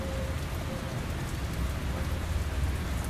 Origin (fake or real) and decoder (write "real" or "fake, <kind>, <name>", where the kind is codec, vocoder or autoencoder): real